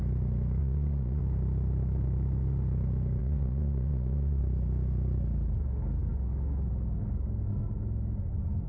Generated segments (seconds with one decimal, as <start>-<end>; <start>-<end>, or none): 0.6-1.2; 3.2-4.4